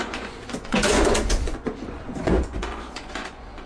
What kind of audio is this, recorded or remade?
remade